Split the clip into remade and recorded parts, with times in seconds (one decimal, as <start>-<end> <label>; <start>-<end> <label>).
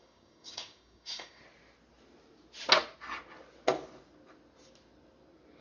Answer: 0.0-1.4 remade; 1.4-5.6 recorded